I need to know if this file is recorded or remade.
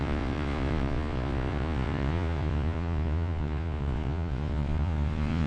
remade